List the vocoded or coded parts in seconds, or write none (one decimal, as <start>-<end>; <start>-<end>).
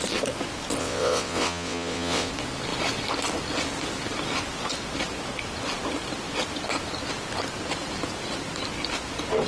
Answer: 0.8-2.3